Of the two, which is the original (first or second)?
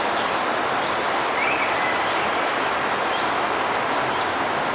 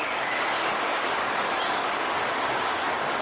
first